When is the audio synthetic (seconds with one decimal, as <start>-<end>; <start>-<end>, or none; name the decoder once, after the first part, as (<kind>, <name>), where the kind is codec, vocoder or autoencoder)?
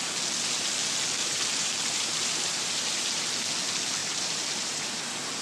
1.2-3.3 (vocoder, BigVGAN v2); 4.0-5.0